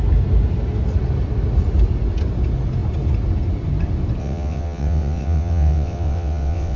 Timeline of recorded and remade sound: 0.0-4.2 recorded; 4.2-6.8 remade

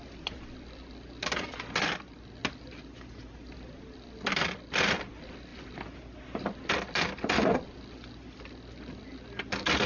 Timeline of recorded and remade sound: 0.0-9.9 recorded

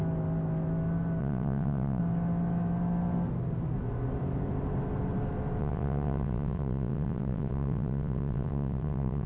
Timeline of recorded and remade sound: 0.0-1.2 recorded; 1.2-2.0 remade; 2.0-5.6 recorded; 5.6-9.3 remade